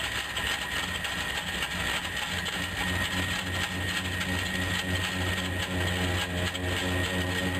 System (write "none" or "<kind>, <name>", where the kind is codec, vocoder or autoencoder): none